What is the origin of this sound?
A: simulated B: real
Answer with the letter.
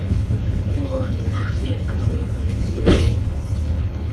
A